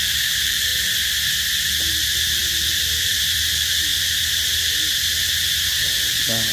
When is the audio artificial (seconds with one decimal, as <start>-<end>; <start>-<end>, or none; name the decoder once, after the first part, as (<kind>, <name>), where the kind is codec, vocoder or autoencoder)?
0.0-0.7 (vocoder, BigVGAN v2); 1.9-3.9; 5.7-6.5